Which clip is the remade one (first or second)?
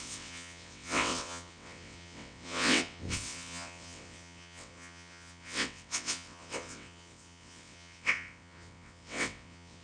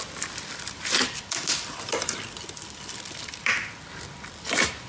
first